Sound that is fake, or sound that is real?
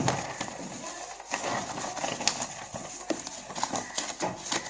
real